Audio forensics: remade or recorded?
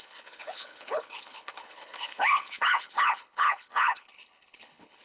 remade